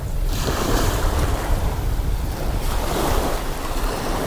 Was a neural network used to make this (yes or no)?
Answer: yes